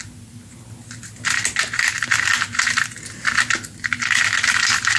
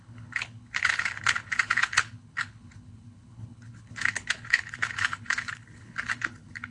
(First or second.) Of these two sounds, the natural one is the first